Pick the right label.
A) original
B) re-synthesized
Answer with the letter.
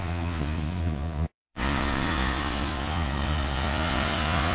B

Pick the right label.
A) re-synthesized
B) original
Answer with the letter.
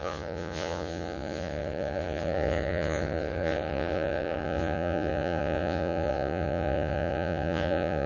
A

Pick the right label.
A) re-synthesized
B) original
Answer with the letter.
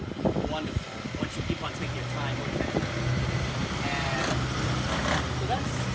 B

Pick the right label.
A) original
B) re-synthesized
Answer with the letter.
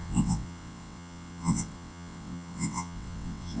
B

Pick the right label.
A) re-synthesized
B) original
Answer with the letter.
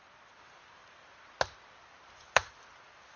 B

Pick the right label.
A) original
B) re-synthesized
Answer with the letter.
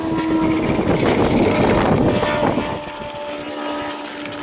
A